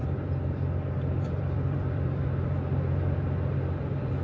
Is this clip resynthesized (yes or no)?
yes